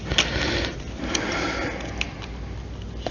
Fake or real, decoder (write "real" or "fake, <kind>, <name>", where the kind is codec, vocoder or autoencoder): real